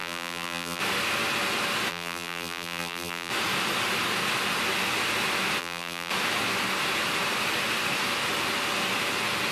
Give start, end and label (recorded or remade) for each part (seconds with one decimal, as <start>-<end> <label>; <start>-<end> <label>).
0.0-0.8 remade; 0.8-1.9 recorded; 1.9-3.3 remade; 3.3-5.6 recorded; 5.6-6.1 remade; 6.1-9.5 recorded